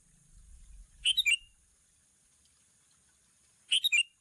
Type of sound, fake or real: fake